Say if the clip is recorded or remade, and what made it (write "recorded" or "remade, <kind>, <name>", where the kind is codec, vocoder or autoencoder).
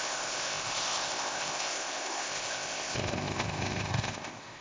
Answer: remade, codec, ZipCodec